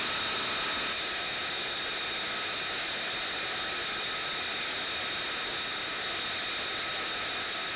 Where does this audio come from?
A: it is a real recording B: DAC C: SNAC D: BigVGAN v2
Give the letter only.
A